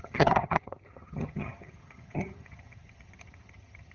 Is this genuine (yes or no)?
no